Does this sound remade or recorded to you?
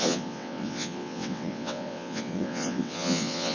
remade